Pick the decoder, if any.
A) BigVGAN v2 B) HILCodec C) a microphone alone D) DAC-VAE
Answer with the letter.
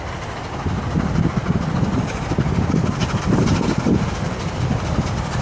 C